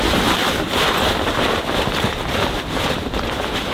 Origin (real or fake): real